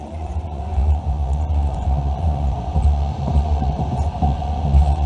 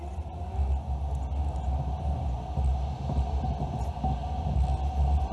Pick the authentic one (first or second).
second